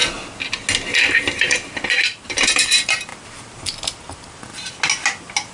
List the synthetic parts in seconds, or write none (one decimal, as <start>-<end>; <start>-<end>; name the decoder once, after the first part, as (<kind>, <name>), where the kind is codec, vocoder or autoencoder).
1.0-3.1 (vocoder, BigVGAN v2)